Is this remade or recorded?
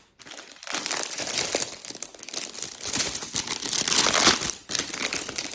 recorded